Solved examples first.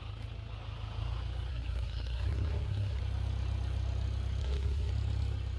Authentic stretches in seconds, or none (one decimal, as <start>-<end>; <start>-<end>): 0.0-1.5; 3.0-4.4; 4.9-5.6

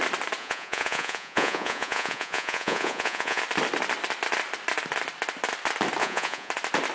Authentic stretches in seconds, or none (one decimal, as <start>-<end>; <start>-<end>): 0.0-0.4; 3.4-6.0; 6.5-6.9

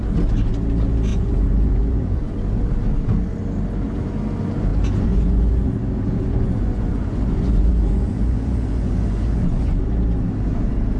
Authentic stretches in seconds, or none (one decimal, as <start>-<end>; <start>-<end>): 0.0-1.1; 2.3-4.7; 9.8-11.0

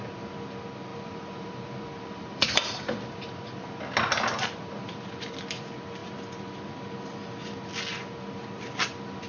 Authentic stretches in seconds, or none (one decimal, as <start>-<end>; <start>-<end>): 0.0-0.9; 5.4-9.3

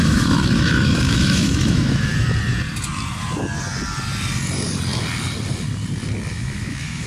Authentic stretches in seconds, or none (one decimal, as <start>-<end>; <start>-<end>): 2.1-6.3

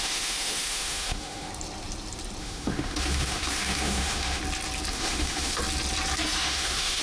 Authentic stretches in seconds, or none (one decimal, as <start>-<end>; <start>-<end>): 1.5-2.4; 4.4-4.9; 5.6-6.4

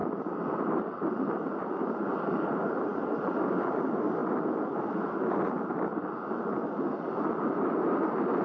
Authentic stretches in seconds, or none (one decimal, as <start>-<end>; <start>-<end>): 0.0-8.4